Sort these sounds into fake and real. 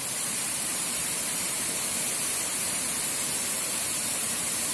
fake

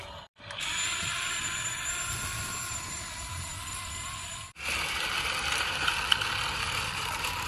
real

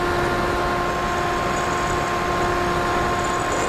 real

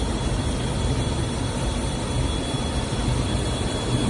real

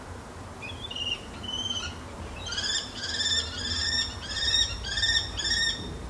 fake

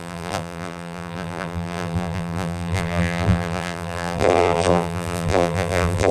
fake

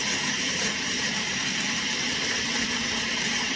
fake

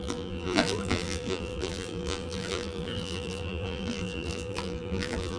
fake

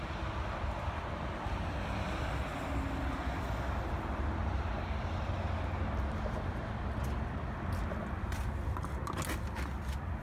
real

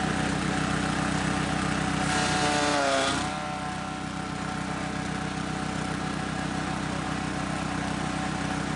real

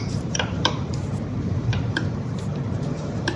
fake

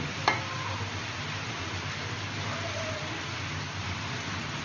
real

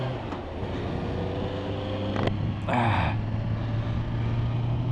real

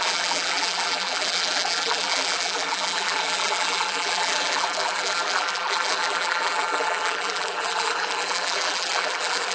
fake